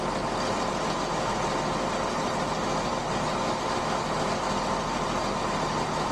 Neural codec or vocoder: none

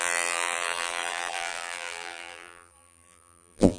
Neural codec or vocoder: vocoder, BigVGAN v2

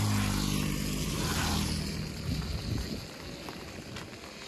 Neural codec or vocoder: none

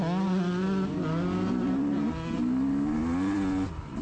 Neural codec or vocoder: none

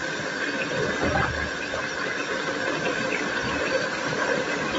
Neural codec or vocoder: vocoder, BigVGAN v2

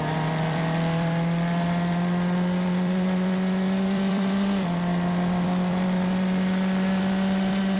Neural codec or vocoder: vocoder, BigVGAN v2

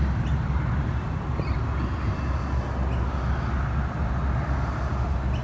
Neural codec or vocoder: none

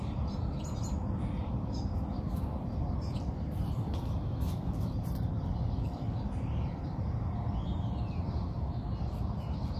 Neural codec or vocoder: none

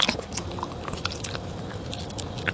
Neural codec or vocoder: none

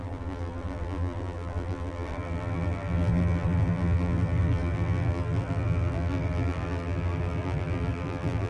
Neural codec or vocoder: vocoder, BigVGAN v2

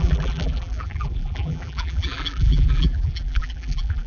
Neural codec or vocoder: vocoder, BigVGAN v2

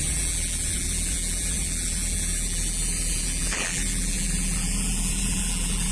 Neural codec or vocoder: vocoder, BigVGAN v2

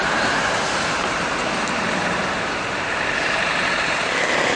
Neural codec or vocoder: vocoder, BigVGAN v2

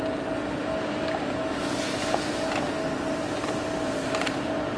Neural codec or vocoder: none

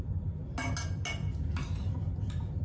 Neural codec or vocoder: none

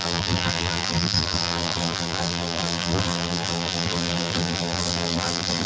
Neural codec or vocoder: vocoder, BigVGAN v2